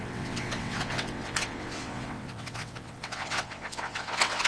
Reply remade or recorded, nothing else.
remade